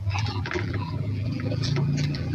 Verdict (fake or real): fake